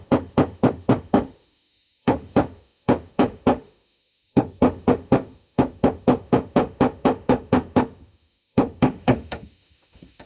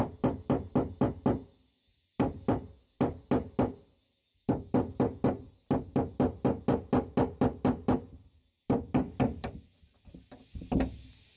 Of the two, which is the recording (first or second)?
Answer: second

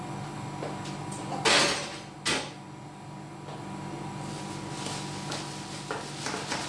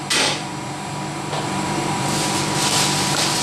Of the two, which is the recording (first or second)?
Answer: first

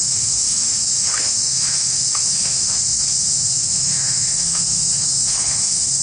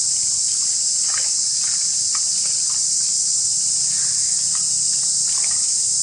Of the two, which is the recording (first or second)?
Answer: second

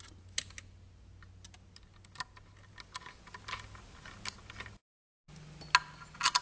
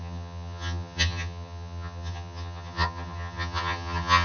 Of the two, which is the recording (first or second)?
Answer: first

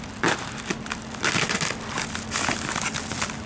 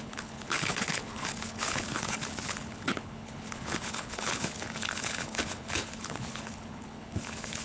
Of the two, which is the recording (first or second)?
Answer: first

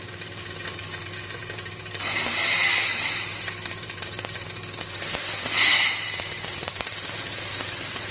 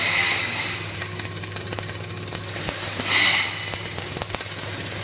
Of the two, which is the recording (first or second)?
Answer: second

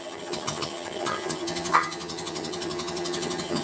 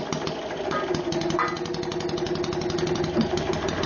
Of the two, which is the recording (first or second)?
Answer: second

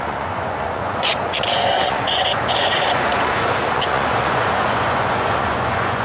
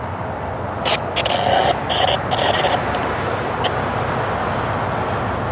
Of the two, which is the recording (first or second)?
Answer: second